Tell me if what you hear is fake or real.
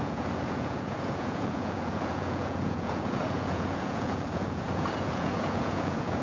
fake